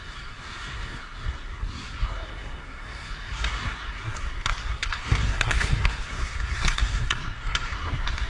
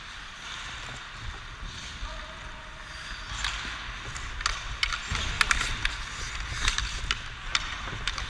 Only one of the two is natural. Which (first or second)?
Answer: second